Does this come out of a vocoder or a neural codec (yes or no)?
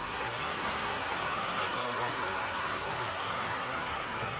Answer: yes